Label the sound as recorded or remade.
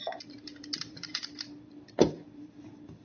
remade